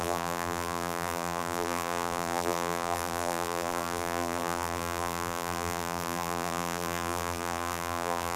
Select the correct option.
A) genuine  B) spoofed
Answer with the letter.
B